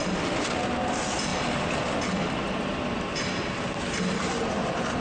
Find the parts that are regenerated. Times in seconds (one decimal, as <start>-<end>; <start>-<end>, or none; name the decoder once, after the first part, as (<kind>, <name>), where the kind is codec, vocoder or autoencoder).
none